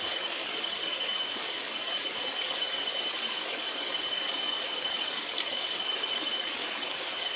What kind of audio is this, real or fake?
fake